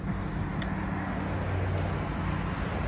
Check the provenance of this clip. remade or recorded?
recorded